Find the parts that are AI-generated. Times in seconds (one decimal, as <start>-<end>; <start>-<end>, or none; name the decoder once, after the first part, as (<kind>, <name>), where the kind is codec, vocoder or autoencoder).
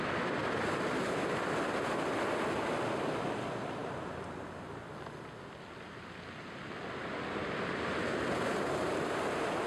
none